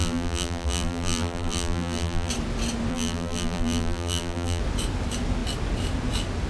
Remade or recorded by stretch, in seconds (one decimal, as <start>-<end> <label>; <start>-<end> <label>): 0.0-2.3 remade; 2.3-2.9 recorded; 2.9-4.6 remade; 4.6-6.5 recorded